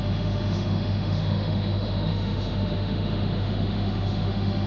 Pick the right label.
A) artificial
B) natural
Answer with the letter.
A